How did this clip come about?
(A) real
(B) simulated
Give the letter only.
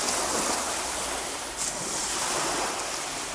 A